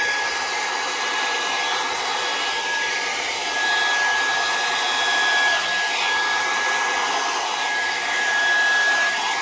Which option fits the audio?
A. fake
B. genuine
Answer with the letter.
B